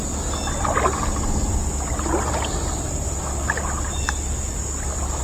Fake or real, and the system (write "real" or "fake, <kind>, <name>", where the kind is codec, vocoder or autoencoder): real